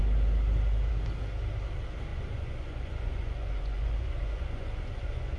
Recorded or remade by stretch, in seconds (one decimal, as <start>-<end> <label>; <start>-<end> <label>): 0.0-2.1 recorded; 2.1-5.4 remade